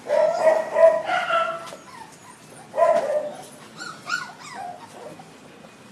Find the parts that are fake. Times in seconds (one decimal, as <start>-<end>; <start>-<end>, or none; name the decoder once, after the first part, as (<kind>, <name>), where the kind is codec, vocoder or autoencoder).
none